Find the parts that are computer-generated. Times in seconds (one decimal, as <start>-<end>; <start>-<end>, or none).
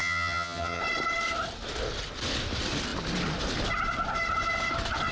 0.0-0.8